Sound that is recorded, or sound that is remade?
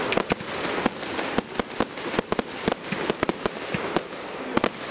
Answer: recorded